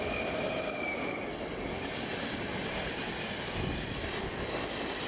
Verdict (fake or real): real